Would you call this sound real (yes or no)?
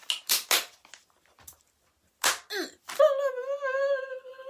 yes